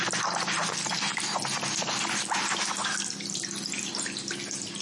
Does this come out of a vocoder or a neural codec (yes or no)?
no